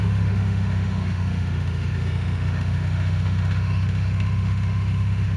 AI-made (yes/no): yes